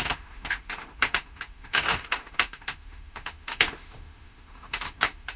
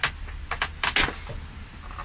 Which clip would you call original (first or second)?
second